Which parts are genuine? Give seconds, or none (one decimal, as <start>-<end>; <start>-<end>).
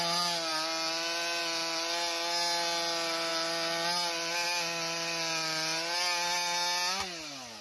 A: 0.0-7.6